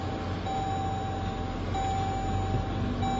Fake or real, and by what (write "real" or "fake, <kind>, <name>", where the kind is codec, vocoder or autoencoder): real